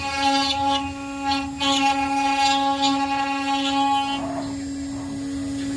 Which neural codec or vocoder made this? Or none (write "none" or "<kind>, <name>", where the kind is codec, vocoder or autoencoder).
none